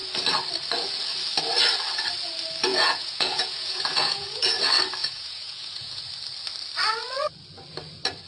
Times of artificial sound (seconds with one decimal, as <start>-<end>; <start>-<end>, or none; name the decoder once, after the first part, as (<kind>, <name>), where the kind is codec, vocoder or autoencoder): 2.7-4.6 (vocoder, Vocos); 5.0-6.0